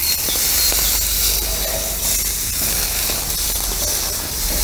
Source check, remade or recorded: recorded